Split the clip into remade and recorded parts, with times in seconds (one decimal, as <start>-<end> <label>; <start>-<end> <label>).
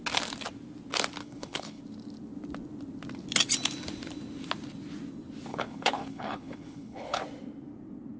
0.0-1.2 recorded; 1.2-1.8 remade; 1.8-5.5 recorded; 5.5-7.2 remade; 7.2-8.2 recorded